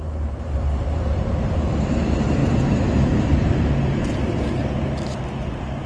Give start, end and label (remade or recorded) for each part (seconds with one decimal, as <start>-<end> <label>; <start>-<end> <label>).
0.0-2.4 remade; 2.4-3.2 recorded; 3.2-5.9 remade